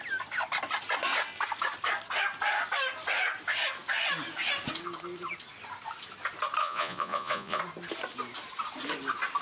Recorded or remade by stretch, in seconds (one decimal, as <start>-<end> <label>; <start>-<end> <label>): 0.0-6.6 recorded; 6.6-7.6 remade; 7.6-9.4 recorded